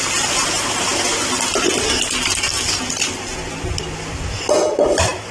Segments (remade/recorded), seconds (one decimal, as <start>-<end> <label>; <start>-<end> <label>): 0.0-5.3 recorded